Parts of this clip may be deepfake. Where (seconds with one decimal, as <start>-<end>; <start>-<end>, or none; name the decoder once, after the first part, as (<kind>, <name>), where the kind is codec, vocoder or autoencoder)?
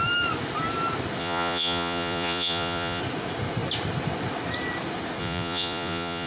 1.2-3.0 (vocoder, Vocos); 5.2-6.3